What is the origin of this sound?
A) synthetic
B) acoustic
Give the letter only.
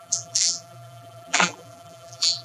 A